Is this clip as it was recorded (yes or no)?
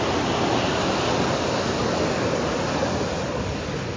yes